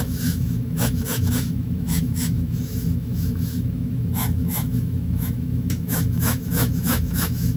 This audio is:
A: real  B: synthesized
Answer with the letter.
B